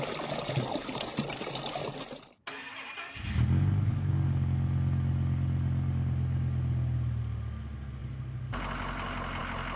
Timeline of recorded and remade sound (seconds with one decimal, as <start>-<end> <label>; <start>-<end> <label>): 0.0-9.8 recorded